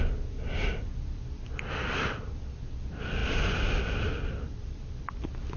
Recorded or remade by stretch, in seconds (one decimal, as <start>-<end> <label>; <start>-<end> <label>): 0.0-5.6 recorded